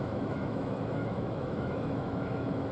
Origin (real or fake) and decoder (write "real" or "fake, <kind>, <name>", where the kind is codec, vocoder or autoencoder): fake, autoencoder, DAC-VAE